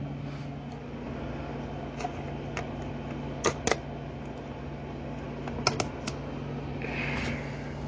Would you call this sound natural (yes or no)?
yes